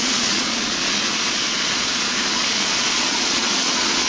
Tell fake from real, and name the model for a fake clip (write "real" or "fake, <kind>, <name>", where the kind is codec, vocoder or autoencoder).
fake, vocoder, Vocos